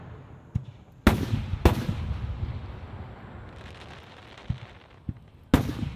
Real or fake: real